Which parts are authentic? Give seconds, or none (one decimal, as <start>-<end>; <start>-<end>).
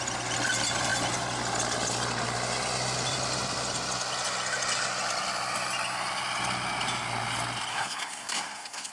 0.0-7.7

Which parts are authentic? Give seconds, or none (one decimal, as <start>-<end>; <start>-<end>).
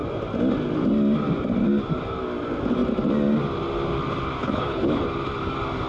0.0-4.4; 5.0-5.9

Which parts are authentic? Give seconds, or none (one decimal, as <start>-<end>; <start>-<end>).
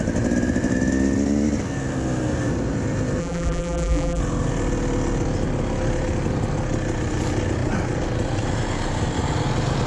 0.0-3.2; 4.2-9.9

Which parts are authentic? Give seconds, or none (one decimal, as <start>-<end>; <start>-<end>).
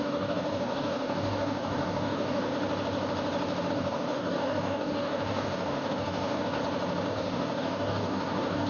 2.5-3.7; 6.6-7.1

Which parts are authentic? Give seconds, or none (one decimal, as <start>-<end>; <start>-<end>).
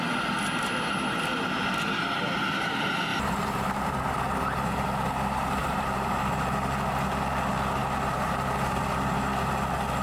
0.0-3.1; 3.9-5.6; 6.1-7.8; 8.8-10.0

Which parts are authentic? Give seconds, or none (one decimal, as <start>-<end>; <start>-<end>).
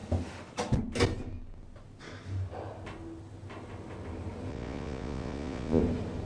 0.0-4.5; 5.8-6.2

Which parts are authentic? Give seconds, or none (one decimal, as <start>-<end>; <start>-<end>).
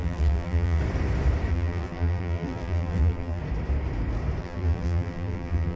0.8-1.5; 3.4-4.4